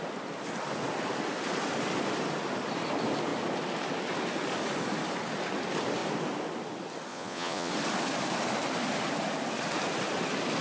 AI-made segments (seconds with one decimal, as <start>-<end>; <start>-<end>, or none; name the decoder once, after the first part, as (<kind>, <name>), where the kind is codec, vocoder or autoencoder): 7.1-7.7 (vocoder, Vocos)